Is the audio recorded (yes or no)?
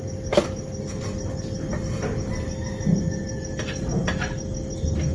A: yes